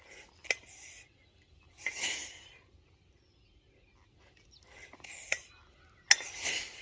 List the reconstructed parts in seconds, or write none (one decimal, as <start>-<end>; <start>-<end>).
none